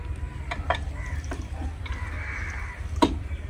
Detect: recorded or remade recorded